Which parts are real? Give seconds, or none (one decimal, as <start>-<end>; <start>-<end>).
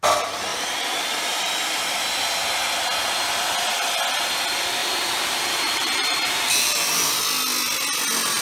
0.0-0.5; 1.5-4.8; 7.2-8.4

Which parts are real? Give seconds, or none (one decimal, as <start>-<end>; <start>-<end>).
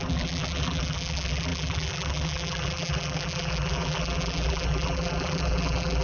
none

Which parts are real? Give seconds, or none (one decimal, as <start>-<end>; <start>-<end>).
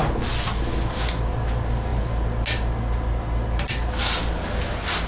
0.0-5.1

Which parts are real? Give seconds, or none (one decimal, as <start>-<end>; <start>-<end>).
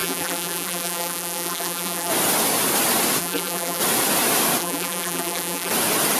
2.1-3.2; 3.8-4.6; 5.7-6.2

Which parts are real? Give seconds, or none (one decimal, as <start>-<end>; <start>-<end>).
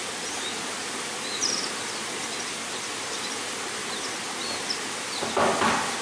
0.0-1.4; 2.2-3.8; 4.8-6.0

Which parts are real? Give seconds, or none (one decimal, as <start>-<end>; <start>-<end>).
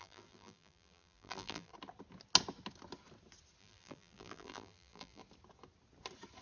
1.7-3.6; 5.2-6.4